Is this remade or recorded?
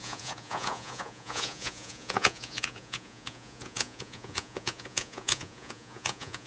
remade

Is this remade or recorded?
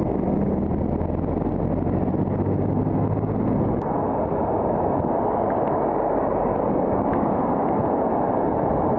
recorded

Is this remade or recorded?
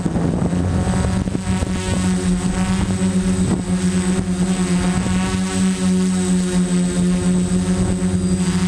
recorded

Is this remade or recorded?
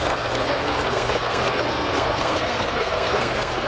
remade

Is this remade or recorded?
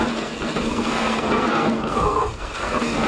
remade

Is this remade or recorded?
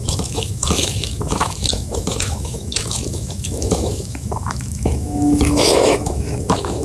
remade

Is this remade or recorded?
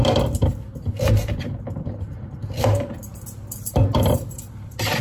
recorded